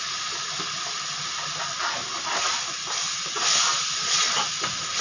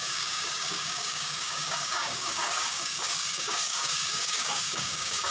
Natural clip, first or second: first